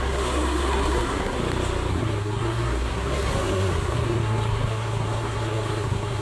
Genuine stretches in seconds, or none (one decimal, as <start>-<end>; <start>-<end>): 1.4-1.9